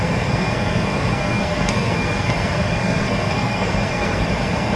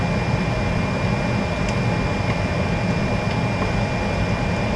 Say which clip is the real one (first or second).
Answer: second